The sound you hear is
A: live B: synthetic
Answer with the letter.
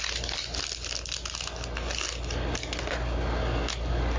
A